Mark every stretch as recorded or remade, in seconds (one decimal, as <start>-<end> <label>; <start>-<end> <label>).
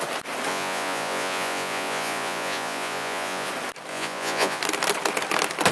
0.0-0.5 recorded; 0.5-3.5 remade; 3.5-3.9 recorded; 3.9-4.6 remade; 4.6-5.7 recorded